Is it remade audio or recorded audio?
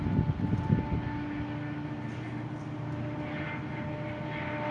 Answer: recorded